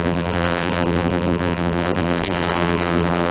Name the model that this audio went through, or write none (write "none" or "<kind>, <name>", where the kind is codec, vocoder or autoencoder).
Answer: vocoder, BigVGAN v2